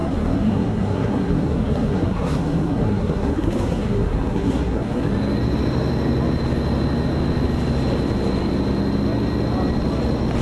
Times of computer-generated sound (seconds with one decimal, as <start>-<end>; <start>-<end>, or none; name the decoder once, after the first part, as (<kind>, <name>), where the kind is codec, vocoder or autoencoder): 0.0-5.1 (codec, SNAC)